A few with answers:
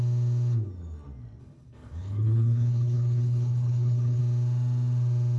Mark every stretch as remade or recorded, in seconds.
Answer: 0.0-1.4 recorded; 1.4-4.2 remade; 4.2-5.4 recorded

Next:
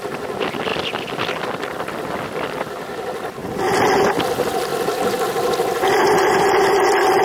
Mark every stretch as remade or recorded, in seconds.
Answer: 0.0-7.2 recorded